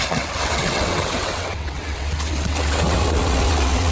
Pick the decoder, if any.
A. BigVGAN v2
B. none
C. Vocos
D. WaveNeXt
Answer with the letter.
D